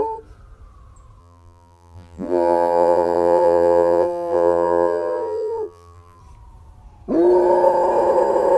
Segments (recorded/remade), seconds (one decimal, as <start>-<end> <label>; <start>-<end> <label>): 0.0-1.2 recorded; 1.2-6.2 remade; 6.2-8.6 recorded